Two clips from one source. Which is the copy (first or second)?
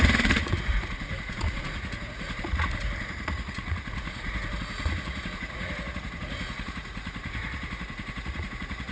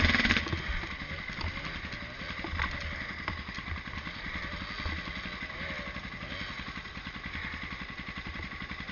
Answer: first